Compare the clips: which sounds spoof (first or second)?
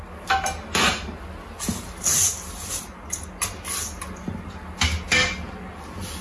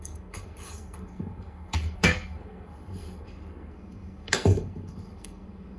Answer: second